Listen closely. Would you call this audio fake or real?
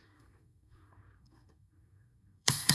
fake